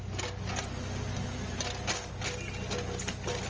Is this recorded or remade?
recorded